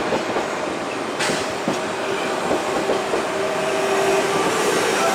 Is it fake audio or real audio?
real